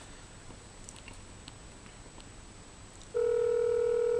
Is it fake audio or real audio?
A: real